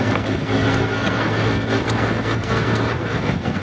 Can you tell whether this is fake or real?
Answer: fake